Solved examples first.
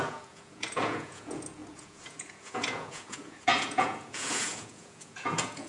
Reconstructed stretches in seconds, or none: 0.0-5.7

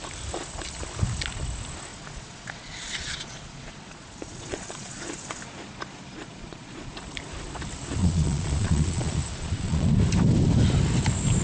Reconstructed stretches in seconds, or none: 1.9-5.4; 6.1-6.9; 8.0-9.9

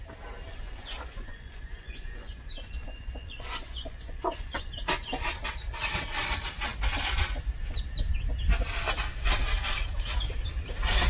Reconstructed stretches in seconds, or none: 0.5-4.7

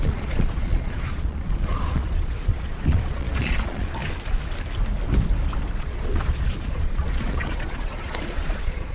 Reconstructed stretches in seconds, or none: 0.0-4.0; 5.8-8.9